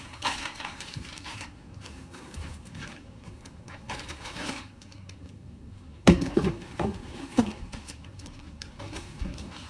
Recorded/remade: remade